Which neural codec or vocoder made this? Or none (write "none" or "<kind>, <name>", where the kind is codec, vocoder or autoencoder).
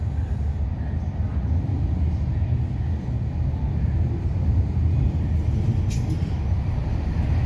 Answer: none